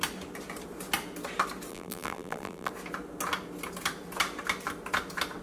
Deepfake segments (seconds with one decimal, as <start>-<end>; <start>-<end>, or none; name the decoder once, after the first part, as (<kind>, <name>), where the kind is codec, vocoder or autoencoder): 1.7-2.7 (vocoder, BigVGAN v2)